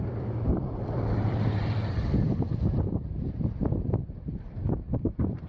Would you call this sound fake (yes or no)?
yes